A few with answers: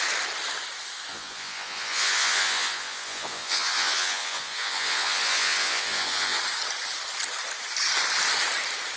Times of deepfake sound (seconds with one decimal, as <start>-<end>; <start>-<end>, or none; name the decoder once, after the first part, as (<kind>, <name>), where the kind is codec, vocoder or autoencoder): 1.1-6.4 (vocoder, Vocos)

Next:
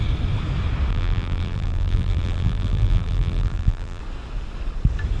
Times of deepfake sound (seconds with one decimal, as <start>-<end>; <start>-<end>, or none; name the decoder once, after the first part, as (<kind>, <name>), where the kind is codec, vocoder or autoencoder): 0.9-4.0 (vocoder, BigVGAN v2)

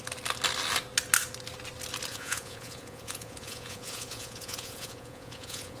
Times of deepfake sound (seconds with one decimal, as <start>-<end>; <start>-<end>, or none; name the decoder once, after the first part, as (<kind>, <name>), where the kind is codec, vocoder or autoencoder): 2.1-5.8 (vocoder, Vocos)